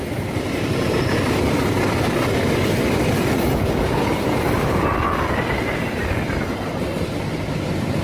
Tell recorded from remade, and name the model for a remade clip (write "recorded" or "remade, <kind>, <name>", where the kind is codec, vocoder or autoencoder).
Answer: recorded